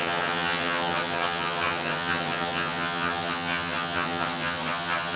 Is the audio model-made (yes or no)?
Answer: yes